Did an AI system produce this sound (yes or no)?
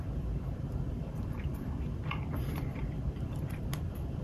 yes